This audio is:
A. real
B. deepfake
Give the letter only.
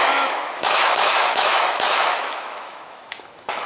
B